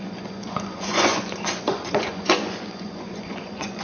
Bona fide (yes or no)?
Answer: no